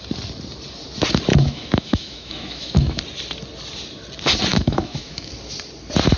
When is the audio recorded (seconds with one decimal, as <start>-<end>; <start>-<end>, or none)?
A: 0.0-1.3; 3.0-4.5; 5.3-6.2

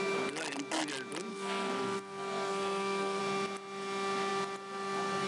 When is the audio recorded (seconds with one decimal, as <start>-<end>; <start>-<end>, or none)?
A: 0.0-1.3; 3.2-5.3

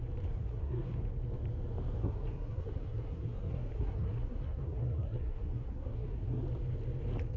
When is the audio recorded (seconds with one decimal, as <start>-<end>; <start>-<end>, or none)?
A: 0.0-0.4; 1.0-2.0; 6.4-7.4

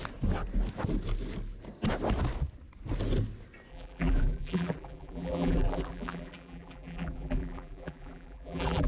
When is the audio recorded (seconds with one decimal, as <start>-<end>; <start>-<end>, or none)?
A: 0.0-3.7

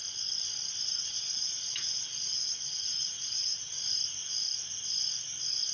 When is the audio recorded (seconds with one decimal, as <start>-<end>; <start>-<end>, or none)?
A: 0.0-1.0; 3.7-5.7

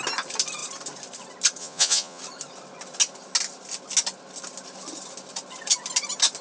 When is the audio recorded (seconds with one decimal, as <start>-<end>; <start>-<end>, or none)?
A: 0.0-1.6; 2.2-6.4

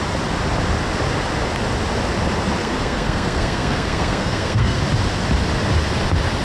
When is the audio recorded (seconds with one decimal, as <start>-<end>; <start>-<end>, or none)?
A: 0.0-2.6; 4.8-6.4

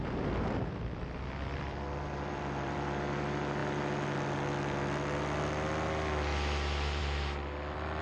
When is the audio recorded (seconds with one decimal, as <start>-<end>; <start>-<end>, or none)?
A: 3.6-7.0